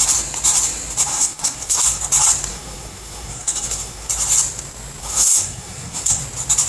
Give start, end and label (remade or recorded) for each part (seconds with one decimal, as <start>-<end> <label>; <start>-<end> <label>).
0.0-1.1 recorded; 1.1-2.0 remade; 2.0-2.5 recorded; 2.5-4.1 remade; 4.1-5.0 recorded; 5.0-6.2 remade; 6.2-6.7 recorded

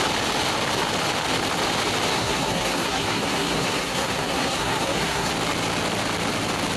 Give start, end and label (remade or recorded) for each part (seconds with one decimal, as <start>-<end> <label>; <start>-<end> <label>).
0.0-2.1 recorded; 2.1-5.3 remade; 5.3-6.8 recorded

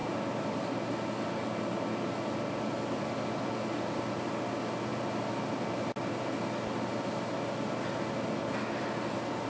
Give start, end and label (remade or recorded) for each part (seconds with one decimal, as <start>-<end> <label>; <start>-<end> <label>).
0.0-9.5 recorded

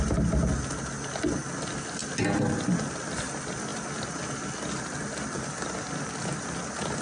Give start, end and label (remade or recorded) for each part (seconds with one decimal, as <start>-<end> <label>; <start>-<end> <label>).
0.0-7.0 recorded

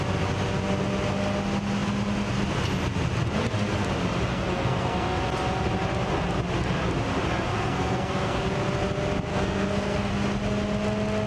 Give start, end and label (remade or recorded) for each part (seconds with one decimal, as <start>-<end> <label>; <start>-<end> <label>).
0.0-4.3 recorded; 4.3-5.2 remade; 5.2-7.5 recorded; 7.5-8.4 remade; 8.4-9.3 recorded; 9.3-10.1 remade; 10.1-11.3 recorded